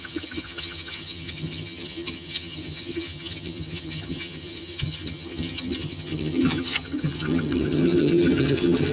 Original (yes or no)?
no